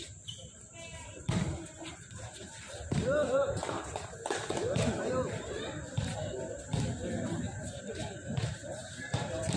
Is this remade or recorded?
remade